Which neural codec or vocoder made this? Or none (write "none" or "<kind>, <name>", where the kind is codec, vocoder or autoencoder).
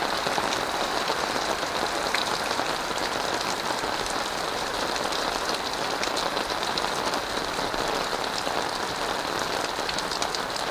vocoder, BigVGAN v2